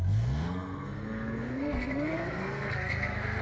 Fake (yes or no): yes